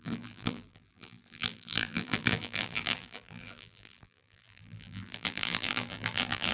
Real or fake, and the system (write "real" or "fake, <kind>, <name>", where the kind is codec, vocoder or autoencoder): fake, vocoder, BigVGAN v2